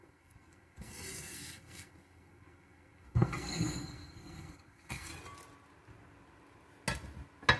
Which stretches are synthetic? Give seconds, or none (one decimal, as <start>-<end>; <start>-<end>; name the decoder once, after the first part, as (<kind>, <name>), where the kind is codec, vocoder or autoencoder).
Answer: 0.0-5.1 (codec, SNAC)